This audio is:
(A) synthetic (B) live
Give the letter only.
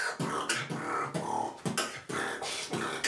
B